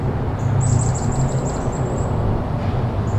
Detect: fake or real fake